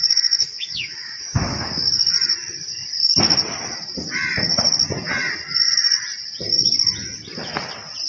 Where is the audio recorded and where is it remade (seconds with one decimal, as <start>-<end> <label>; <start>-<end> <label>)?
0.0-1.7 remade; 1.7-8.1 recorded